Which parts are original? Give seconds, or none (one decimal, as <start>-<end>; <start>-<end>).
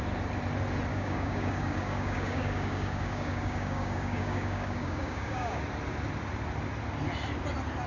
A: 0.0-0.9; 5.6-7.9